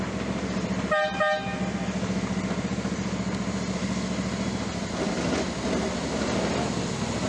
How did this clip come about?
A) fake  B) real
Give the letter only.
B